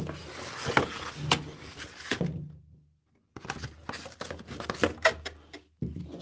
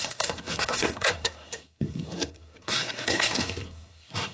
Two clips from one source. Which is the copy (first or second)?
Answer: second